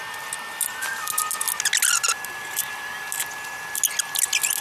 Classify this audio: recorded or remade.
recorded